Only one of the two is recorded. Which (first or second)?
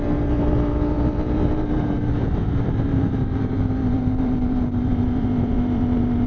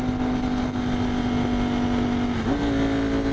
second